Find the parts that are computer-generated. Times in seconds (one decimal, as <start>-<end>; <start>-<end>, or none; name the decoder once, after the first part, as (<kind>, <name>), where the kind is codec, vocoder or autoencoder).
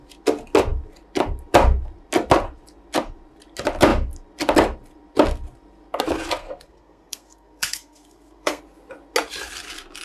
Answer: 6.4-8.6 (codec, SNAC)